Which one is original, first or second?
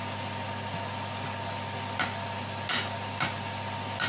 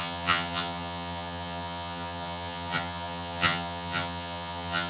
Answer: first